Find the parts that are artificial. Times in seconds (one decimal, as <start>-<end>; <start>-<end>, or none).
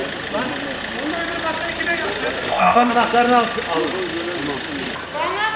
2.4-2.9